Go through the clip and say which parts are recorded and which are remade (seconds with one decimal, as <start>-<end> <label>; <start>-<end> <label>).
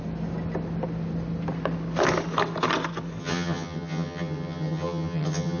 0.0-3.2 recorded; 3.2-5.6 remade